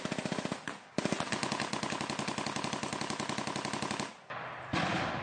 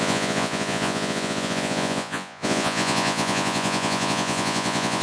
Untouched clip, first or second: first